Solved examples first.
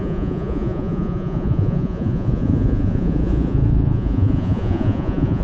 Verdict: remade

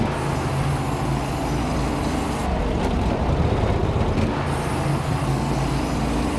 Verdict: recorded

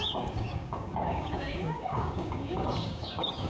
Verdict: remade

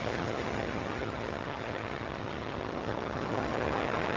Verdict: remade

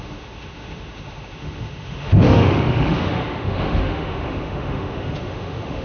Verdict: remade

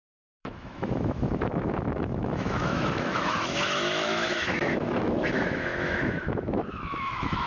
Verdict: remade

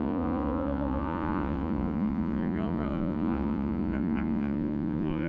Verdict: remade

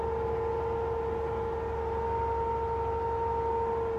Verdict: recorded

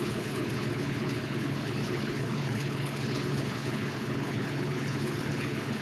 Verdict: remade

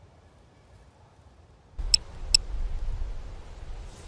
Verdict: recorded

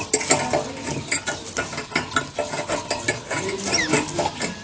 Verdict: recorded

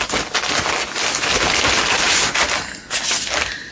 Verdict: recorded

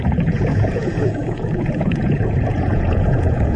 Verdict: remade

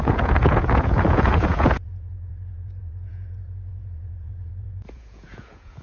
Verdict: remade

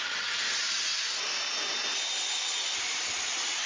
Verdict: recorded